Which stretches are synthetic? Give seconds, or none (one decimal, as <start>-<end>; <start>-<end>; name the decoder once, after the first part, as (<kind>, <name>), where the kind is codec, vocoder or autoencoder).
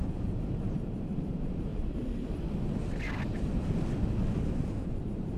0.0-1.7 (vocoder, BigVGAN v2); 4.9-5.4